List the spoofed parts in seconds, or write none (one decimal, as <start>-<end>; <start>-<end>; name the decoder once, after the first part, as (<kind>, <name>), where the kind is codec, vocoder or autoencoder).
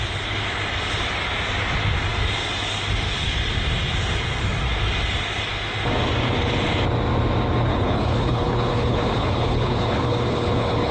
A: 7.7-10.9 (codec, HILCodec)